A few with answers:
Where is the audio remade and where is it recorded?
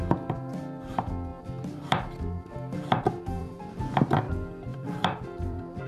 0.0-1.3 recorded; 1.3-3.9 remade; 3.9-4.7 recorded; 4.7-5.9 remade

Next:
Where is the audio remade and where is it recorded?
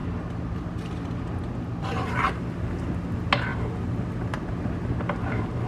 0.0-3.5 recorded; 3.5-4.4 remade; 4.4-5.7 recorded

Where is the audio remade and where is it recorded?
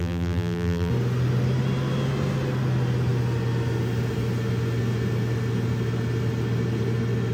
0.0-0.9 remade; 0.9-7.3 recorded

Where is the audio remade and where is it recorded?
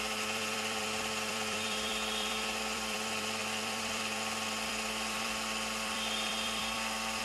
0.0-7.2 remade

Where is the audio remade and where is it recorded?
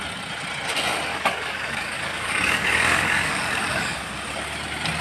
0.0-1.1 recorded; 1.1-4.1 remade; 4.1-5.0 recorded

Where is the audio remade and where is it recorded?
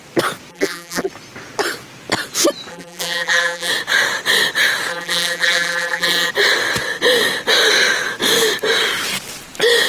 0.0-0.5 recorded; 0.5-1.1 remade; 1.1-2.7 recorded; 2.7-3.7 remade; 3.7-4.9 recorded; 4.9-6.3 remade; 6.3-9.9 recorded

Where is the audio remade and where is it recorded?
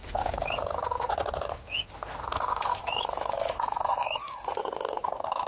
0.0-2.7 recorded; 2.7-4.2 remade; 4.2-5.5 recorded